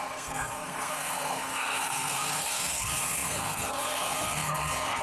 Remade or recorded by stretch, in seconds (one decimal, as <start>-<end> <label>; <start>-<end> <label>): 0.0-5.0 remade